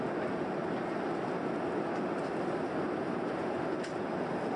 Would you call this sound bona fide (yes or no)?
yes